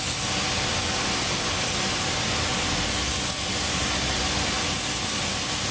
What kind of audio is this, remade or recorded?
recorded